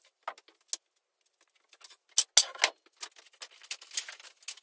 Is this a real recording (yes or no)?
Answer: yes